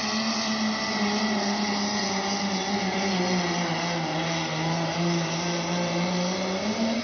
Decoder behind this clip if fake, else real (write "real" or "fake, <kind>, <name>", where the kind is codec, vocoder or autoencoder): real